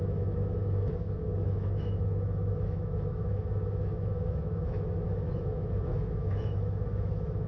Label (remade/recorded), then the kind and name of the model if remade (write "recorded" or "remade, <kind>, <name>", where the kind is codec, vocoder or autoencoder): remade, autoencoder, DAC-VAE